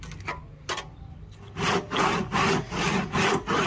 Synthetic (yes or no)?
no